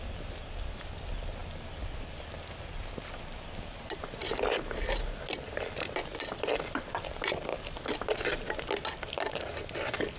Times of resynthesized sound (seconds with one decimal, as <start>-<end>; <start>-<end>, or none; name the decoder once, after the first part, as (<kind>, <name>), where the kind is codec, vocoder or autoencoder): 4.2-5.0 (vocoder, BigVGAN v2); 6.1-6.9; 7.5-8.2